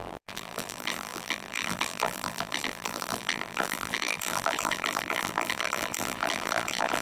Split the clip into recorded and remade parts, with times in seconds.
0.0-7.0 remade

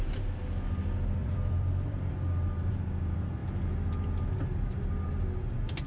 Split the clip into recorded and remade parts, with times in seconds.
0.0-1.2 recorded; 1.2-2.1 remade; 2.1-5.9 recorded

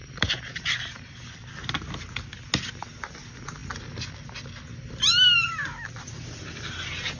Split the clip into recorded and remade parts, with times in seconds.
0.0-1.1 remade; 1.1-7.2 recorded

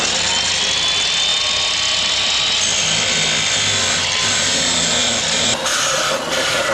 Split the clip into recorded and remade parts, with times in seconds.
0.0-4.0 recorded; 4.0-4.6 remade; 4.6-6.7 recorded

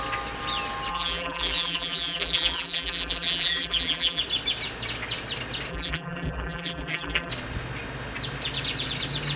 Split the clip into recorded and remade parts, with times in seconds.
0.0-0.9 recorded; 0.9-4.2 remade; 4.2-5.7 recorded; 5.7-7.3 remade; 7.3-9.4 recorded

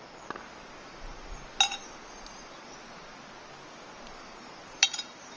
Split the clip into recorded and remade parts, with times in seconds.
0.0-1.1 remade; 1.1-4.0 recorded; 4.0-5.4 remade

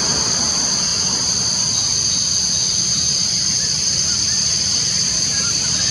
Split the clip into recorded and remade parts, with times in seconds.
0.0-0.9 recorded; 0.9-1.4 remade; 1.4-2.8 recorded; 2.8-5.9 remade

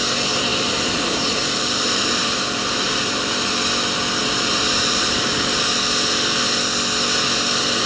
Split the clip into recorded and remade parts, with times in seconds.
0.0-0.5 recorded; 0.5-3.5 remade; 3.5-4.2 recorded; 4.2-5.6 remade; 5.6-7.9 recorded